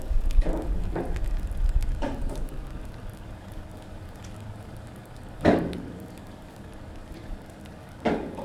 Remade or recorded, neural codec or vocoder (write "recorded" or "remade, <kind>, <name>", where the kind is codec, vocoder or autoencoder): remade, codec, DAC